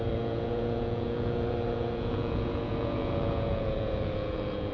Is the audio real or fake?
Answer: fake